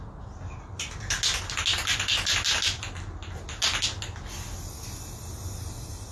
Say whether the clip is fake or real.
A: real